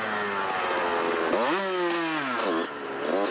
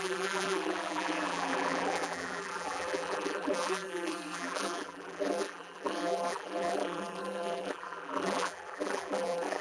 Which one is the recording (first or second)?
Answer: first